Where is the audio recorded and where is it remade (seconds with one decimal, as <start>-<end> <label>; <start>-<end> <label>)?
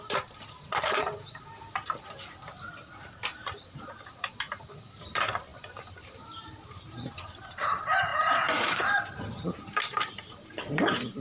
0.0-11.2 remade